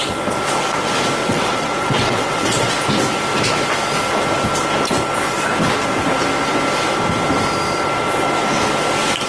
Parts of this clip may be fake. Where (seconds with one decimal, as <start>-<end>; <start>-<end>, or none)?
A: 1.2-2.7